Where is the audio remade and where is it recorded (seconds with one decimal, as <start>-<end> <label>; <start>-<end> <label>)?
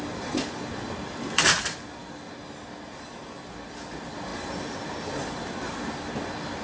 0.0-6.6 recorded